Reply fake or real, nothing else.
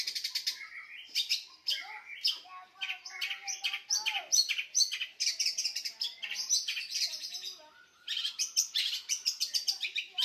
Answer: real